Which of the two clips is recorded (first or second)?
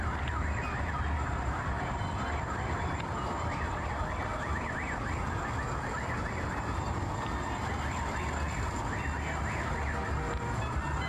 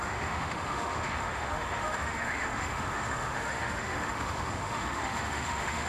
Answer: first